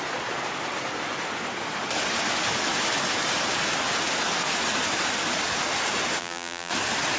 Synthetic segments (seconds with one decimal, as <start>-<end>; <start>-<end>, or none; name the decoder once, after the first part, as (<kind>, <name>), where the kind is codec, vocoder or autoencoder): 6.2-6.7 (vocoder, BigVGAN v2)